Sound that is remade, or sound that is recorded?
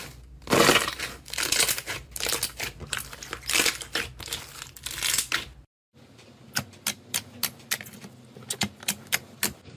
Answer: recorded